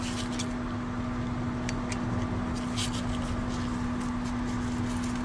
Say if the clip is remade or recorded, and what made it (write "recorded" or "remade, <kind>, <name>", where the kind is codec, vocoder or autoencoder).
recorded